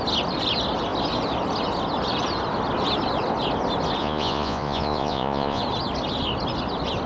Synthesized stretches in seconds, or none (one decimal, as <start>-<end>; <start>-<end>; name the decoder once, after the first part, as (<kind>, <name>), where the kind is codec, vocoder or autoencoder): 4.0-5.6 (vocoder, Vocos)